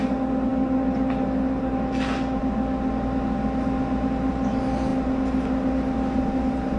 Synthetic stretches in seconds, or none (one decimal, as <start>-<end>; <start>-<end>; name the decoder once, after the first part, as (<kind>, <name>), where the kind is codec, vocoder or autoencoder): none